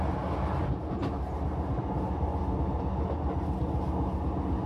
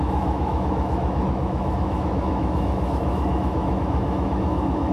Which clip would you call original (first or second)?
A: first